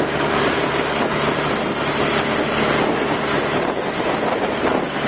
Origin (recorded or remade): recorded